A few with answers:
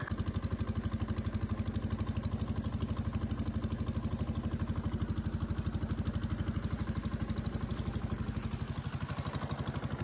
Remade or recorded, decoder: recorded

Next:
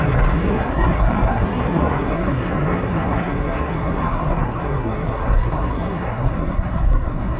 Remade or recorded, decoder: remade, codec, SNAC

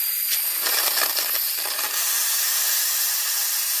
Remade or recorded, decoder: recorded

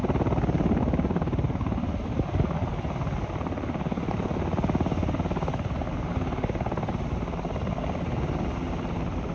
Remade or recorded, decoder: recorded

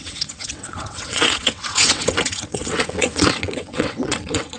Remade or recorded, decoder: remade, vocoder, WaveNeXt